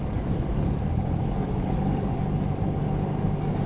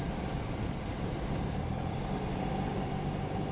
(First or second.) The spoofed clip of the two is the first